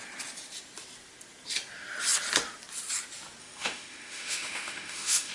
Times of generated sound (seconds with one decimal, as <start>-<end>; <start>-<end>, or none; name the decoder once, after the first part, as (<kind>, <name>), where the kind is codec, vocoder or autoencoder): 3.4-5.3 (autoencoder, DAC-VAE)